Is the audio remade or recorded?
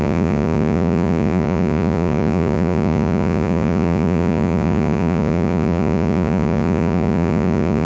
remade